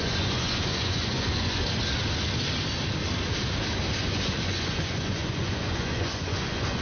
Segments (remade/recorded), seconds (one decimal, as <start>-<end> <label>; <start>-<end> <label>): 0.0-1.6 remade; 1.6-4.0 recorded; 4.0-6.8 remade